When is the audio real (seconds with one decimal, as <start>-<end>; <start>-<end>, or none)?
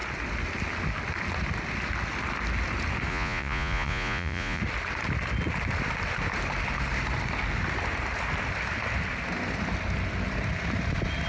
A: 0.0-3.1; 4.6-11.3